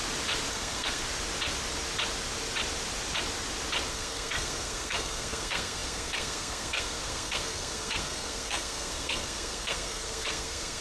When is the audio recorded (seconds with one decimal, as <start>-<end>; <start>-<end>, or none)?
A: 0.0-0.5; 1.0-3.9